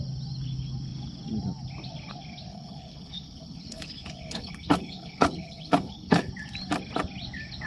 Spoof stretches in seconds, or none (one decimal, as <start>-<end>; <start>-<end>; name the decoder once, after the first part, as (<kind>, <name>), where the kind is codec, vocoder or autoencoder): 2.5-6.3 (codec, HILCodec)